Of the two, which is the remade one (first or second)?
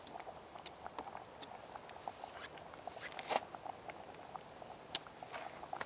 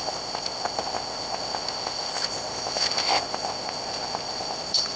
second